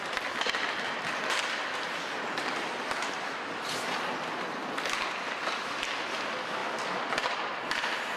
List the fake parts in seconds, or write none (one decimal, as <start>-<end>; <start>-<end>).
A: 4.6-5.3; 6.6-7.1